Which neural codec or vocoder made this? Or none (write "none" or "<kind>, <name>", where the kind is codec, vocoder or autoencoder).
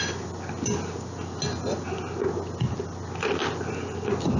none